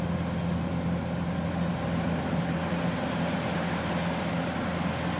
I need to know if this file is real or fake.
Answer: real